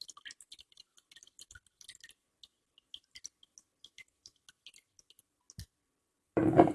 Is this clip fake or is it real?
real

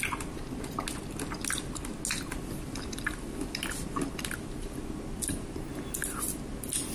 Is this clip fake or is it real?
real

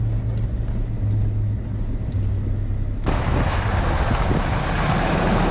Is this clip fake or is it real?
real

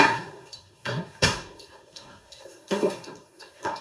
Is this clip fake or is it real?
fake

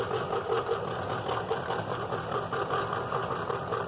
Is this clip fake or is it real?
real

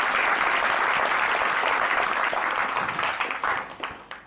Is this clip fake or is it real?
real